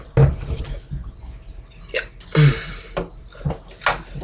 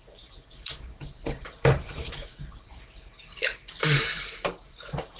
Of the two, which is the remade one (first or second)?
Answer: second